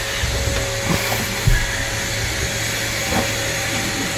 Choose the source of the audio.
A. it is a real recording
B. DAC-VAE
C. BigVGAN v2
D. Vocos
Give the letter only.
A